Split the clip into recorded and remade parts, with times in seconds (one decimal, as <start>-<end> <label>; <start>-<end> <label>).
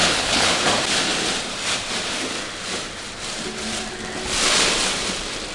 0.0-0.6 remade; 0.6-5.5 recorded